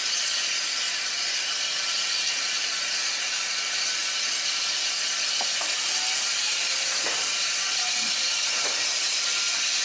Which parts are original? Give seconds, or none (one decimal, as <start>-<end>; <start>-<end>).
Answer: 0.0-9.8